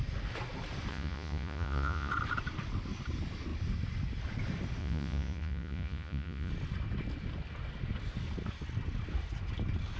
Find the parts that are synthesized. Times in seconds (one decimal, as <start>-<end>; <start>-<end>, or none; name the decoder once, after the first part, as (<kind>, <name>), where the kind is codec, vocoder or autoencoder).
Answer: 0.9-2.1 (vocoder, Vocos); 4.8-6.5